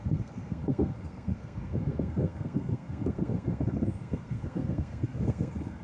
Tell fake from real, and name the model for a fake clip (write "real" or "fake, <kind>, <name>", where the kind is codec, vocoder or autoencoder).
fake, codec, SNAC